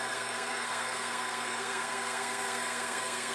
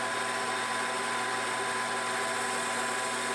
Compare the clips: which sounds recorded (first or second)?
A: second